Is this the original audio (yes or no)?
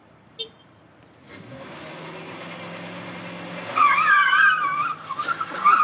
yes